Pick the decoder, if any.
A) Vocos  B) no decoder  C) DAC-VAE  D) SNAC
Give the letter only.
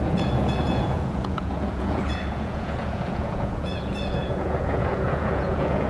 A